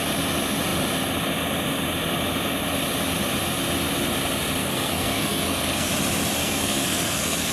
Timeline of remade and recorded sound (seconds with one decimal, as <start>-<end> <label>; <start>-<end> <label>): 0.0-4.6 recorded; 4.6-5.9 remade; 5.9-6.4 recorded; 6.4-7.5 remade